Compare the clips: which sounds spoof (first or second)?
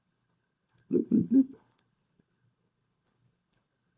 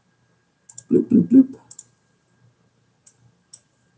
first